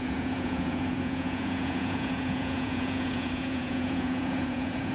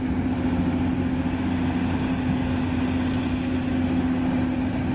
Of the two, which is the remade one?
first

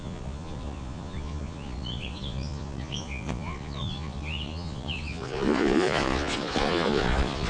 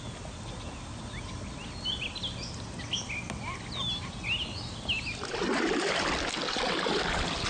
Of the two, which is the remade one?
first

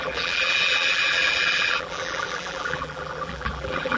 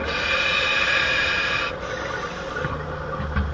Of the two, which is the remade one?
first